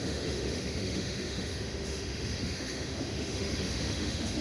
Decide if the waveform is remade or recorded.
remade